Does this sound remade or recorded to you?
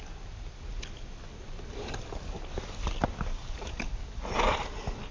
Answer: recorded